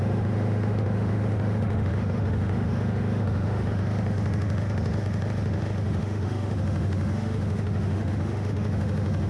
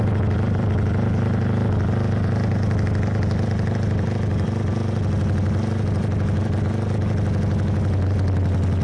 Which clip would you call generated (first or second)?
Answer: first